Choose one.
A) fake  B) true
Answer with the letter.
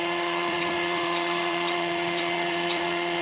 A